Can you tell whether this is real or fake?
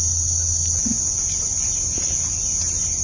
real